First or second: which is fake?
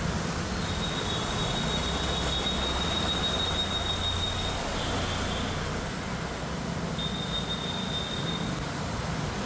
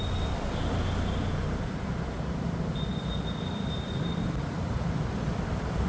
second